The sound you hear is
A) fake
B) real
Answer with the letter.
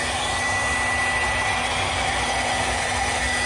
B